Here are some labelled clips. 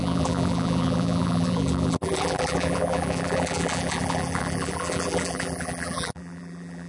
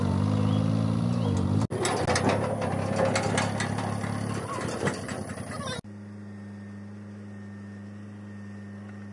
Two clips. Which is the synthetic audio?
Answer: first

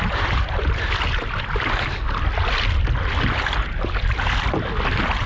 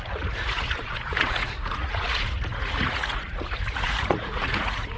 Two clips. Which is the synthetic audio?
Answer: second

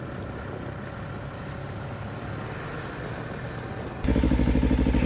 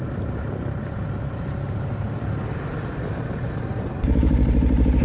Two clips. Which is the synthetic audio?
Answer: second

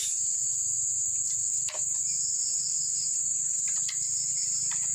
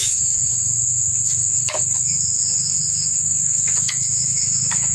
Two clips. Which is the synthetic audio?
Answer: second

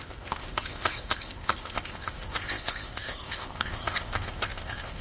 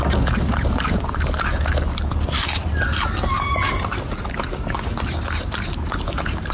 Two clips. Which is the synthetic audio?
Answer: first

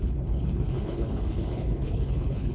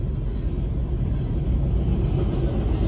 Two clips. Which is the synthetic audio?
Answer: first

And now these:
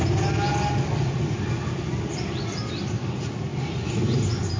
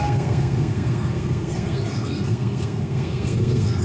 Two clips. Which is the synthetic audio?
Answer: second